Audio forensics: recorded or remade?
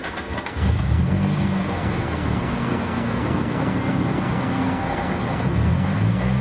remade